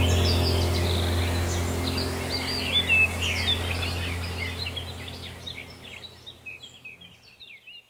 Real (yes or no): yes